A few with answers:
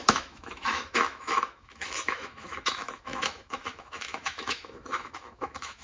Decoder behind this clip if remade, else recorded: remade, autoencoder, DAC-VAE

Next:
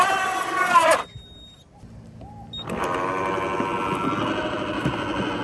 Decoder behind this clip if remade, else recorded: recorded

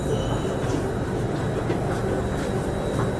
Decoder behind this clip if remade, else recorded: recorded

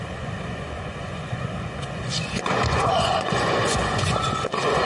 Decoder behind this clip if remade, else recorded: remade, vocoder, Vocos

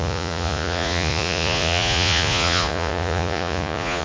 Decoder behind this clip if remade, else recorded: remade, vocoder, Vocos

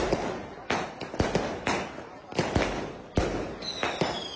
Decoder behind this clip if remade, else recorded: recorded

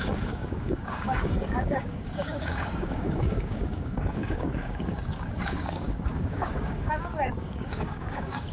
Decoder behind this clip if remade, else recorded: remade, codec, DAC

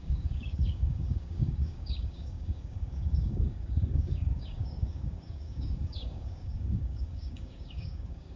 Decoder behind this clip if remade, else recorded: remade, codec, DAC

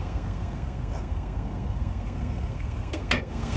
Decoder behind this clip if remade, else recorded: remade, codec, SNAC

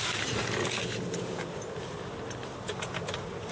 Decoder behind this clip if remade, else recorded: recorded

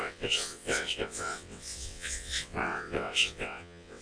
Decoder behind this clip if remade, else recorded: remade, vocoder, WaveNeXt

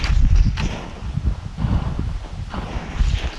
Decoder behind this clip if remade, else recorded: recorded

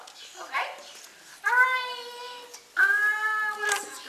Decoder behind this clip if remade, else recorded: recorded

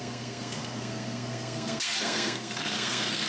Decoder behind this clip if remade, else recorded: remade, codec, SNAC